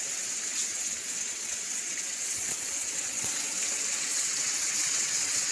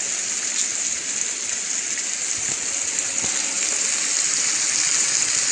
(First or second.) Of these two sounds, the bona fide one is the second